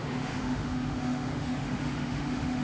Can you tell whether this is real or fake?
fake